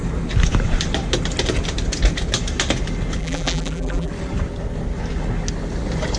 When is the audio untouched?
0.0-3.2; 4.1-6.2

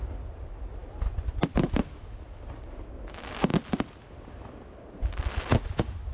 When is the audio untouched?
0.0-6.1

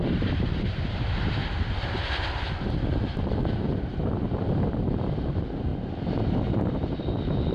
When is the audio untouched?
1.4-2.8; 5.7-7.5

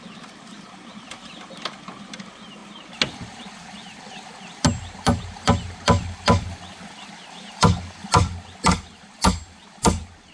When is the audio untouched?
0.0-10.3

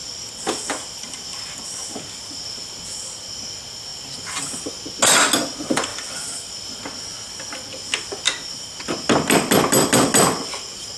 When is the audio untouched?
1.7-5.9; 6.8-11.0

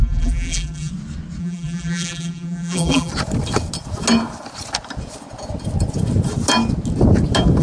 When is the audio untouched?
0.9-1.4; 3.1-7.6